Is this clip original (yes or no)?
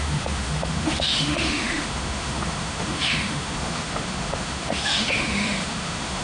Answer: no